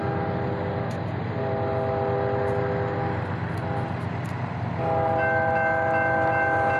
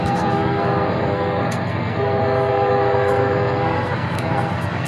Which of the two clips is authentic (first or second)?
first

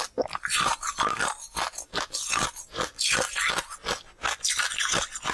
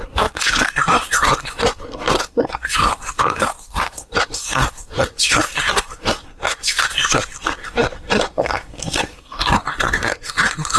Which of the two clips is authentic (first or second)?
first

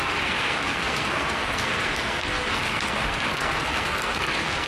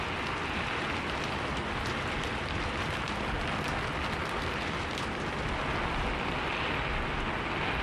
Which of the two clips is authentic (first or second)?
second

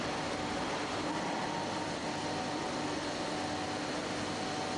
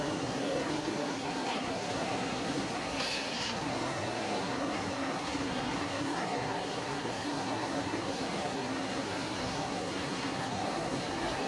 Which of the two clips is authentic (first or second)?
first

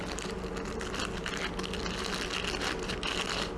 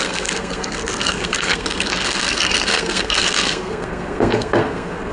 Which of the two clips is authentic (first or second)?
first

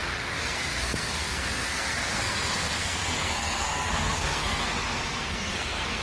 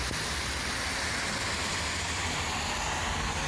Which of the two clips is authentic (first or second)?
second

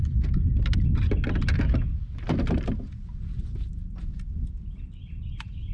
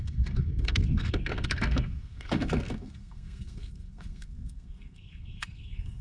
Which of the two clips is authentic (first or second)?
first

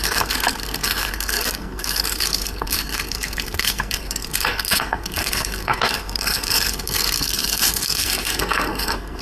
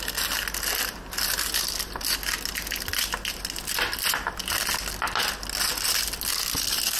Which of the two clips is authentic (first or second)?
second